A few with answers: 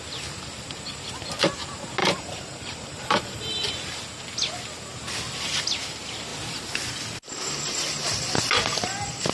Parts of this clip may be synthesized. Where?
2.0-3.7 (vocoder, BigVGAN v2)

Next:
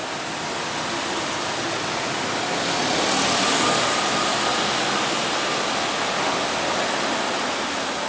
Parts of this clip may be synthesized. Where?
none

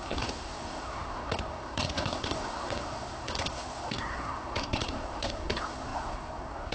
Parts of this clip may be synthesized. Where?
0.0-6.7 (codec, SNAC)